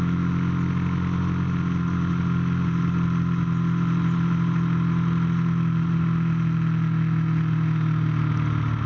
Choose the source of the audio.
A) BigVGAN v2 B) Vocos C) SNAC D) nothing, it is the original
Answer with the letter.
D